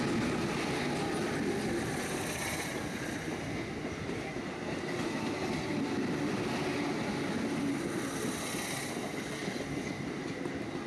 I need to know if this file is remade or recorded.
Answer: recorded